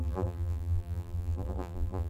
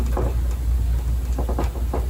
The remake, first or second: first